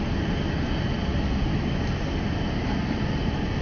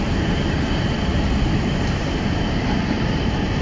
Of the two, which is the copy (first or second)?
second